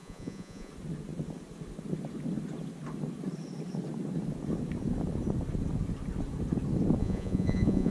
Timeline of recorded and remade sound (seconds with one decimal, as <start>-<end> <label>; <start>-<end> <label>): 0.0-0.7 remade; 0.7-7.0 recorded; 7.0-7.9 remade